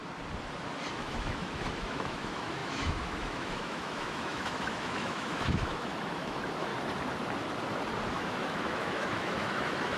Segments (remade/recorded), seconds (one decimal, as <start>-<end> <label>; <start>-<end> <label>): 0.0-0.9 recorded; 0.9-6.7 remade; 6.7-8.1 recorded; 8.1-10.0 remade